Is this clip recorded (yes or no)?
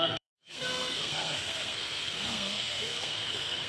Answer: no